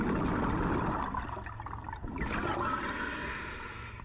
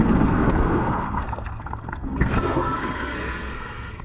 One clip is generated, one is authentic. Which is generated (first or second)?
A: second